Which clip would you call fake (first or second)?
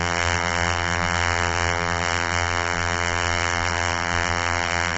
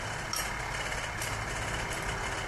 first